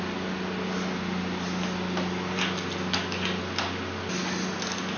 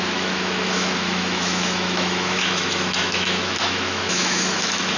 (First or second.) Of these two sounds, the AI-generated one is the second